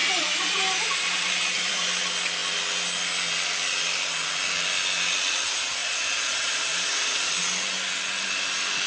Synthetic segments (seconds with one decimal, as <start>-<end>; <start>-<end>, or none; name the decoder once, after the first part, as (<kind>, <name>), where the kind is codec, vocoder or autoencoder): 0.0-1.9 (vocoder, BigVGAN v2); 5.8-7.3